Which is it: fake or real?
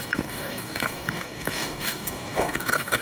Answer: fake